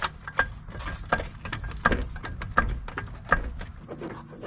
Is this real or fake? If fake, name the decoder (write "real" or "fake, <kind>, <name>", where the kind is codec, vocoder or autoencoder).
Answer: real